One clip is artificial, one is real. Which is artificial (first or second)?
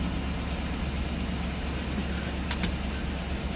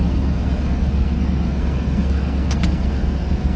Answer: second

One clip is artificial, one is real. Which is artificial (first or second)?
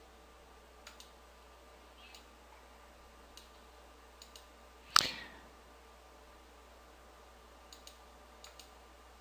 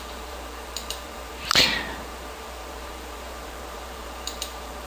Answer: second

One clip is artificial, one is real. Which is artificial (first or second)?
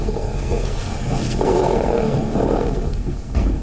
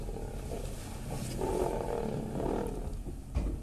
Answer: first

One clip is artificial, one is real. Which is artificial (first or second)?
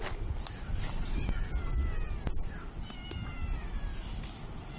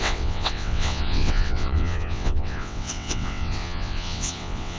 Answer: second